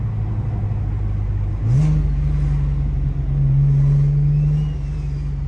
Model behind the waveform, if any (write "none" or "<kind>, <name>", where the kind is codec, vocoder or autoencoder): none